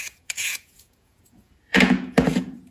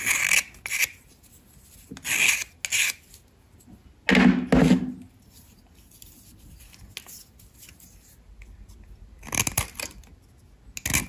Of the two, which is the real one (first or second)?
second